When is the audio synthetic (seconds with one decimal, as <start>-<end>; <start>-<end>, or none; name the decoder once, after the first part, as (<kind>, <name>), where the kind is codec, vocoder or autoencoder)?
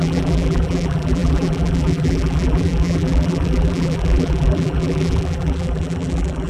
0.0-6.5 (vocoder, BigVGAN v2)